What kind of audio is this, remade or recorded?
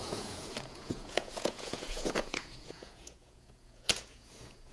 remade